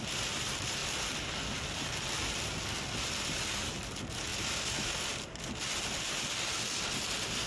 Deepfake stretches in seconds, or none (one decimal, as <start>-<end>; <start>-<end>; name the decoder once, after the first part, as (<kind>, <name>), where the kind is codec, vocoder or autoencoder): none

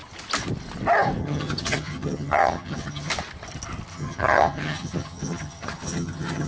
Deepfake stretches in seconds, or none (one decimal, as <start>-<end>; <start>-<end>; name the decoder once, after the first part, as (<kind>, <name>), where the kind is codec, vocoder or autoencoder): 1.2-3.1 (vocoder, HiFi-GAN); 3.9-6.5

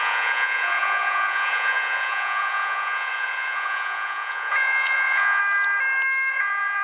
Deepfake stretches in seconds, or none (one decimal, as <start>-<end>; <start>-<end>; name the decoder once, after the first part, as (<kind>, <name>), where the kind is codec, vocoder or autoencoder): 0.0-5.4 (vocoder, Vocos); 6.3-6.8

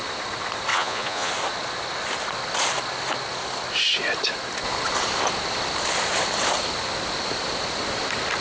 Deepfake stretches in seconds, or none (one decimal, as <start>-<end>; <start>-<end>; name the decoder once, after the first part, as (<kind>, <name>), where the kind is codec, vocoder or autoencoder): 0.7-1.3 (vocoder, Vocos)

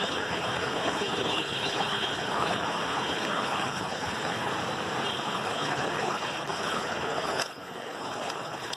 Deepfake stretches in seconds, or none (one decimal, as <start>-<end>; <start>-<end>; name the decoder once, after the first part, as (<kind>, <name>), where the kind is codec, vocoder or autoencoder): 0.0-4.5 (codec, HILCodec); 5.1-8.8

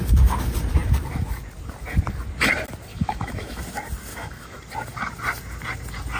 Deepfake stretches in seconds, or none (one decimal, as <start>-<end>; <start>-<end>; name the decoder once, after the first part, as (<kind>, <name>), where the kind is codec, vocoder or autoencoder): 2.9-3.6 (autoencoder, DAC-VAE); 4.1-4.6